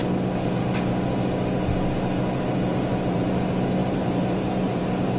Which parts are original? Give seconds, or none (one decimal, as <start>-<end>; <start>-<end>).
0.0-2.7; 3.4-3.8; 4.8-5.2